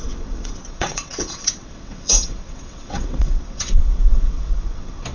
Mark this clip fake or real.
fake